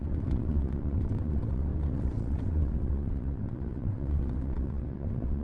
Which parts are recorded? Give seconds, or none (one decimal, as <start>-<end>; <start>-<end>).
none